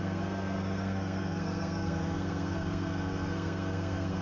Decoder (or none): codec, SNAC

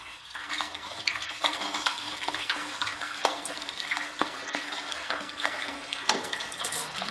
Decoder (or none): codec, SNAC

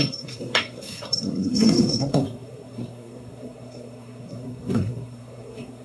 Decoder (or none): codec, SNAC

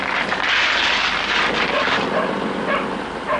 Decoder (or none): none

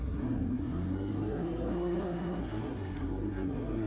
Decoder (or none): codec, SNAC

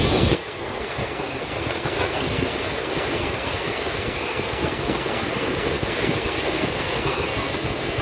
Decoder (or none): codec, SNAC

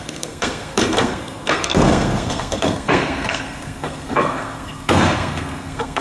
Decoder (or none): codec, SNAC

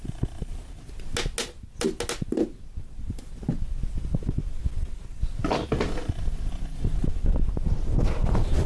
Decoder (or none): none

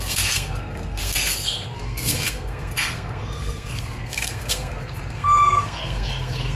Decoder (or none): codec, SNAC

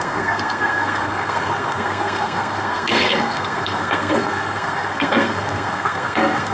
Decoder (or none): codec, SNAC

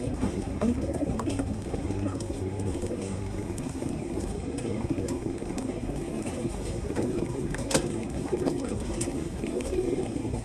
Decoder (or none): codec, SNAC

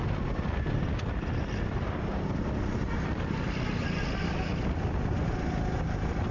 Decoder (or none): none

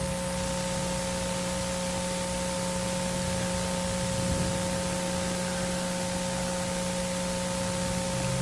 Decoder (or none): none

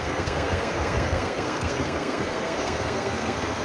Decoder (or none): codec, SNAC